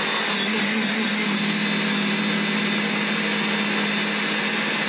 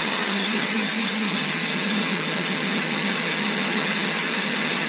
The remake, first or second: second